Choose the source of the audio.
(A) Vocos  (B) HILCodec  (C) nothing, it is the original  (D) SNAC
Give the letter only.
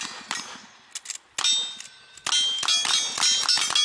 C